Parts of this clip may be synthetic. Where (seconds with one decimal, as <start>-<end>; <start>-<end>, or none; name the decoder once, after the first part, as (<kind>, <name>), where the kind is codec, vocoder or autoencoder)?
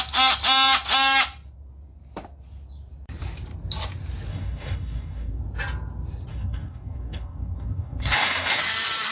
4.3-5.4 (codec, DAC); 6.3-8.6